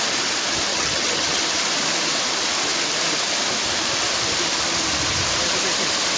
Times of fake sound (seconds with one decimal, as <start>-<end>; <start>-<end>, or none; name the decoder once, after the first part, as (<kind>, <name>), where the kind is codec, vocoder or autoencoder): 0.7-1.4 (vocoder, HiFi-GAN)